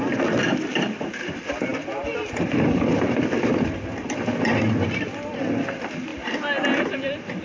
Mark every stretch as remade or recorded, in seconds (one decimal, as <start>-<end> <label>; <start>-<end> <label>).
0.0-7.4 recorded